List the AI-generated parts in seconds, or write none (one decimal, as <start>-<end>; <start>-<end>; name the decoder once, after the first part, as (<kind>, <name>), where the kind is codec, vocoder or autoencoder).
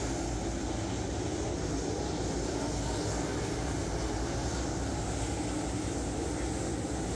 none